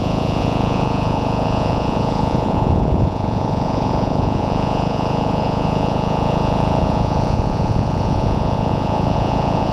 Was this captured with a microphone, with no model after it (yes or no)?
no